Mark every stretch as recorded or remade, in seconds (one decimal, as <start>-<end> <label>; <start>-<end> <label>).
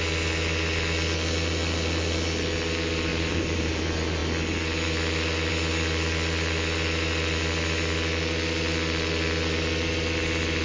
0.0-3.1 recorded; 3.1-3.8 remade; 3.8-10.6 recorded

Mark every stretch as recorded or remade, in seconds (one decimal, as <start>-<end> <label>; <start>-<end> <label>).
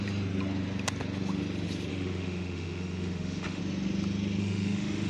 0.0-1.9 recorded; 1.9-3.6 remade; 3.6-4.4 recorded; 4.4-5.1 remade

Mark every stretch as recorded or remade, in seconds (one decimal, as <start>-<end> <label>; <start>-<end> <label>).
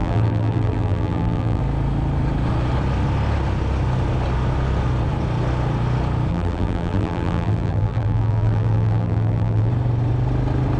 0.0-1.6 remade; 1.6-6.3 recorded; 6.3-9.7 remade; 9.7-10.8 recorded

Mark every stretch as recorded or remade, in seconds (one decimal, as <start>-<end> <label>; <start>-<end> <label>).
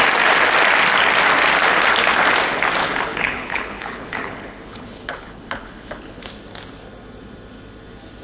0.0-2.8 recorded; 2.8-6.2 remade; 6.2-8.2 recorded